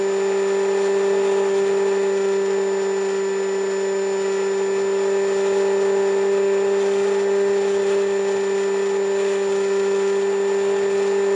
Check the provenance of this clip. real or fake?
real